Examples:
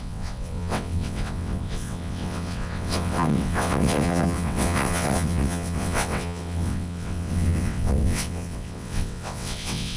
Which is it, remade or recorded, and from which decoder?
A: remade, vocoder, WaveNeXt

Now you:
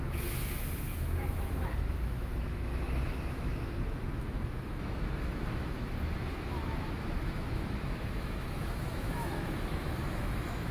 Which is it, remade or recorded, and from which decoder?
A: remade, autoencoder, DAC-VAE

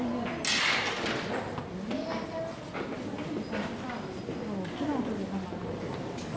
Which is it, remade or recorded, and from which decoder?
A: recorded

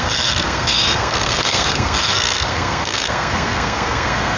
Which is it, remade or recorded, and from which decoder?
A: remade, codec, SNAC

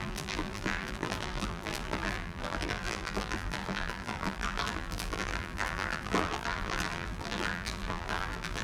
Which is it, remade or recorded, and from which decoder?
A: remade, vocoder, BigVGAN v2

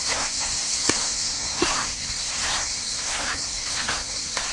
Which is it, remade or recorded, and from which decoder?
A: remade, codec, SNAC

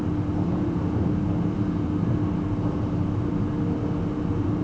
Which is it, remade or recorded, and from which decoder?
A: recorded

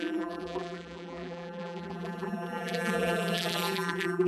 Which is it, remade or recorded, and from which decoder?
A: remade, vocoder, BigVGAN v2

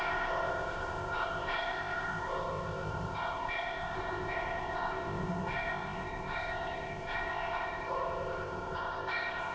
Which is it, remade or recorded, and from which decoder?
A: remade, codec, ZipCodec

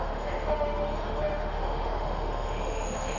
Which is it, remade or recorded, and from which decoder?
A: remade, autoencoder, DAC-VAE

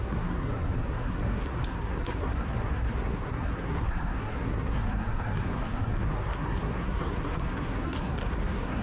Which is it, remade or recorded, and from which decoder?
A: remade, codec, SNAC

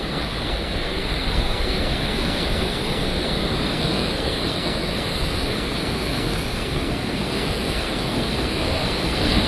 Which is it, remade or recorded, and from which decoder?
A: remade, codec, SNAC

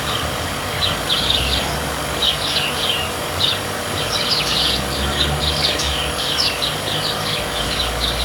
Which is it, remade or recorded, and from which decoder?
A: remade, codec, DAC